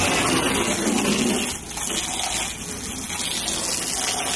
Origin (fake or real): real